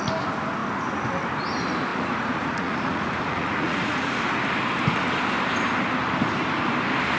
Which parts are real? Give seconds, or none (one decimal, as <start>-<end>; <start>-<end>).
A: 0.0-1.9; 4.3-7.2